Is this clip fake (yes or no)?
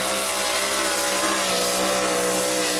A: no